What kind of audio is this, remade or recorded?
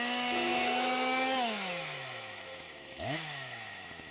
remade